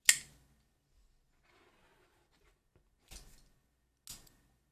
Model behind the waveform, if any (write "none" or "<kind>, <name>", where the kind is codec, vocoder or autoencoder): none